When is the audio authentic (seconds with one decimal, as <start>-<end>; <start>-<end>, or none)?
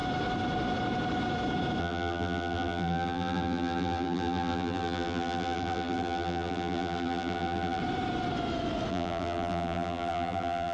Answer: 0.0-1.8; 7.8-8.9